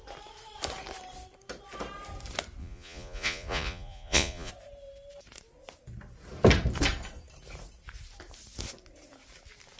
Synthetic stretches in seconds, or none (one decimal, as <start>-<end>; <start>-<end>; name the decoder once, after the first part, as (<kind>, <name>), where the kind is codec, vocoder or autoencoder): 2.6-4.5 (vocoder, Vocos)